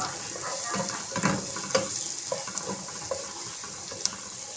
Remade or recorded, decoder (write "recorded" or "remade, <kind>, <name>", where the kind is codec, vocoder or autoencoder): recorded